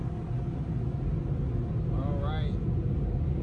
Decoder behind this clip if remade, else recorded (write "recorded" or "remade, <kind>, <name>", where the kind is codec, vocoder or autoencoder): recorded